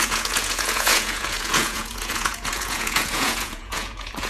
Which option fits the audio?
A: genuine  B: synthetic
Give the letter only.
B